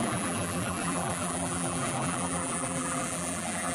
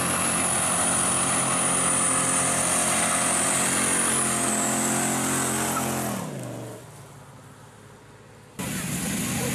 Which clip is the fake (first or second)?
first